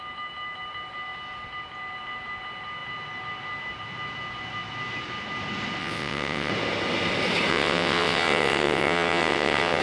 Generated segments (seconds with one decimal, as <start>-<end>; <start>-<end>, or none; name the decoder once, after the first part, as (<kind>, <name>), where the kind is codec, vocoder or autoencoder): 5.8-6.5 (vocoder, WaveNeXt); 7.5-9.8